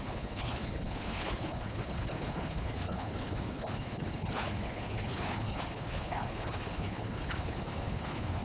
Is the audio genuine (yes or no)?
no